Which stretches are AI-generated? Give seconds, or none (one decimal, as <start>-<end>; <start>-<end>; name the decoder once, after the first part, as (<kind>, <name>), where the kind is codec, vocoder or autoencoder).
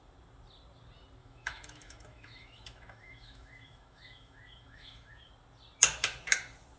1.2-5.3 (autoencoder, DAC-VAE)